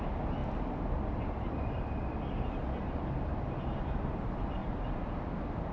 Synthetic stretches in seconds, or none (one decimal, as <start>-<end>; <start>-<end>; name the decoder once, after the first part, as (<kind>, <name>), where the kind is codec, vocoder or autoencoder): 4.6-5.1 (vocoder, BigVGAN v2)